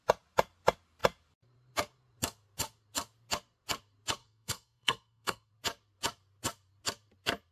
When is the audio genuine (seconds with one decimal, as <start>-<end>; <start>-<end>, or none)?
0.0-4.2; 5.5-7.5